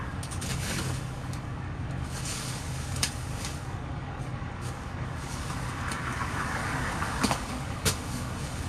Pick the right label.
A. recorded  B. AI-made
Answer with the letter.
B